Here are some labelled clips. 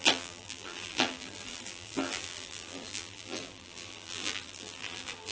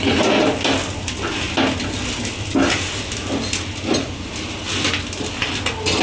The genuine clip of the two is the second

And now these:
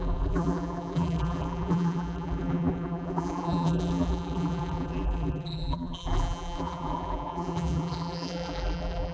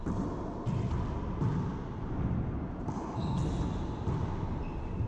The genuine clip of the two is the second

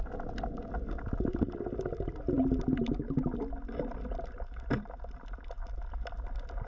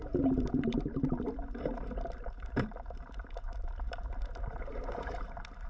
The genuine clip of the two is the first